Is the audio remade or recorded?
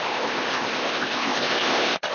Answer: remade